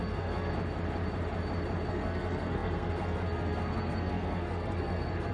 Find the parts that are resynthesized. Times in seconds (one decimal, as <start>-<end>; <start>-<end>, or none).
0.0-0.5; 1.9-5.3

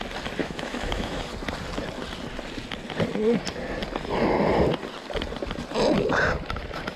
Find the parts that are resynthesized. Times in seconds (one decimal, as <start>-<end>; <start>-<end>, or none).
0.4-1.3